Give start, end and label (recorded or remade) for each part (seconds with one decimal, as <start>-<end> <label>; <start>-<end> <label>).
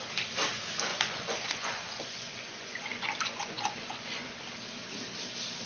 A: 0.0-0.9 recorded; 0.9-4.3 remade; 4.3-5.7 recorded